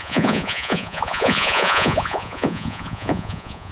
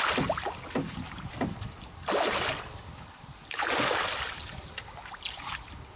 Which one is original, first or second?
second